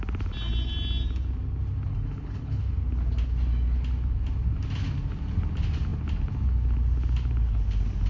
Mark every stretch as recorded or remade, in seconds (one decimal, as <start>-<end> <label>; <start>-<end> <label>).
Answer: 0.0-1.9 recorded; 1.9-2.6 remade; 2.6-8.1 recorded